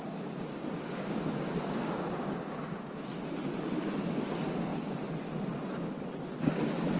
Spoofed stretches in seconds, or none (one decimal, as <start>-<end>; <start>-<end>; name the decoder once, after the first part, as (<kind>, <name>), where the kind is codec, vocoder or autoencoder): 0.0-3.1 (codec, DAC); 4.0-4.7